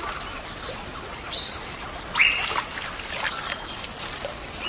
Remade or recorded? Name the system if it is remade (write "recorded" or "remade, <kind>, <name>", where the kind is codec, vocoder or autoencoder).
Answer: recorded